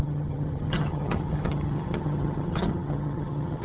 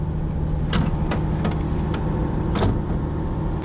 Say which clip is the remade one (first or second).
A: first